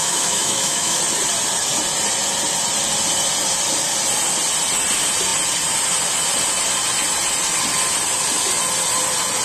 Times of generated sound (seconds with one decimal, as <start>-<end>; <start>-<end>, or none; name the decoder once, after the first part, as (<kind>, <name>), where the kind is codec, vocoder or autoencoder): 0.0-1.0 (autoencoder, DAC-VAE)

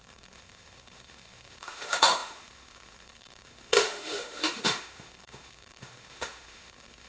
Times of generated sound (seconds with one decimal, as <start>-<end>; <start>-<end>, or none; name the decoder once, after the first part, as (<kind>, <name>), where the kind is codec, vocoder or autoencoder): 0.0-7.1 (autoencoder, DAC-VAE)